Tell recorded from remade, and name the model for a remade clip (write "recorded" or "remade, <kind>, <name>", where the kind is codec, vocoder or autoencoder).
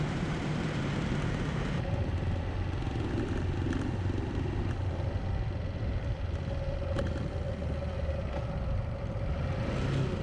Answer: recorded